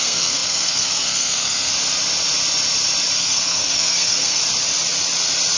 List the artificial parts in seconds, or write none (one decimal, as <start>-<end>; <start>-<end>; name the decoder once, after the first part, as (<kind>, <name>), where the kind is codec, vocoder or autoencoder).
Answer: 0.0-1.7 (codec, SNAC); 3.2-4.4